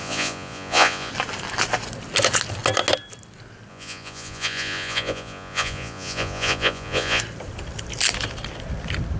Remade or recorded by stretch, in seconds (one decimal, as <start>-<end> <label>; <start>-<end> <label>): 0.0-1.1 remade; 1.1-3.7 recorded; 3.7-7.2 remade; 7.2-9.2 recorded